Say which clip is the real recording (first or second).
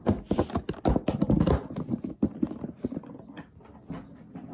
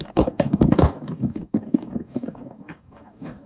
first